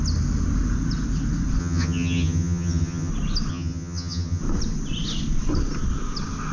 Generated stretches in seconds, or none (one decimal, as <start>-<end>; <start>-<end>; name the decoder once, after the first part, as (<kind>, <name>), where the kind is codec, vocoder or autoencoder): 1.6-3.1 (vocoder, HiFi-GAN); 3.5-4.4